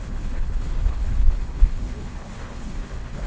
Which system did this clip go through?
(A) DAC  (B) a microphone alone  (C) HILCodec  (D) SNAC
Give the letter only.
C